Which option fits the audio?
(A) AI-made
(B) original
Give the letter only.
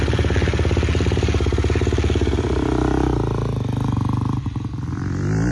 B